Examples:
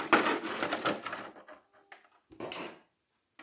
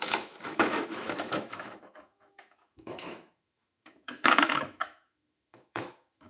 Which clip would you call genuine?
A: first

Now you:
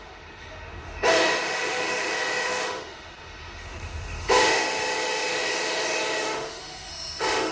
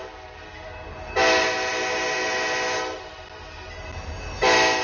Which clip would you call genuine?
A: second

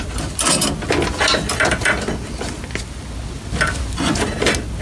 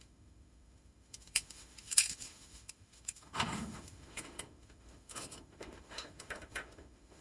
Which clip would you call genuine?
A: first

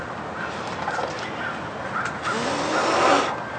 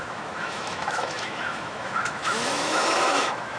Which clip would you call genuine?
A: first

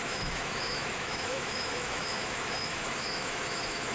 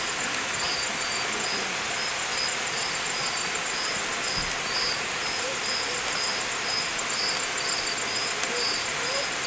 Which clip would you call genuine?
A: second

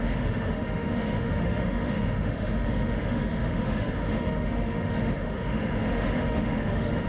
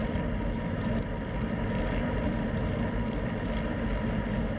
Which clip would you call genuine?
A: second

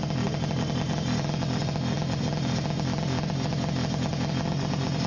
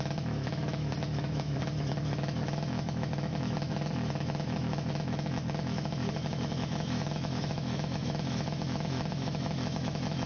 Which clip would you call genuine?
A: first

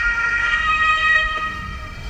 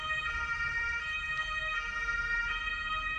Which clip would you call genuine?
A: second